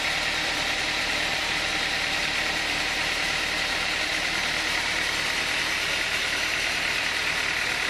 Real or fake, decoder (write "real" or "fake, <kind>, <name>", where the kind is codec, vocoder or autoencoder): fake, vocoder, BigVGAN v2